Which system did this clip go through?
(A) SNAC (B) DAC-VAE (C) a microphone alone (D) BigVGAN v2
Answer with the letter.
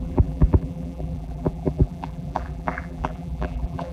D